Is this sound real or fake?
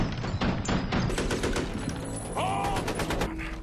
real